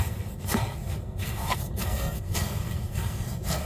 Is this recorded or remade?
remade